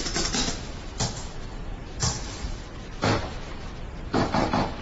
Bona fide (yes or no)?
yes